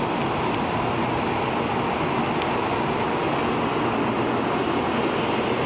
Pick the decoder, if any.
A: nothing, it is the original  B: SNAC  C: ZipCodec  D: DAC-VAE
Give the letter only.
A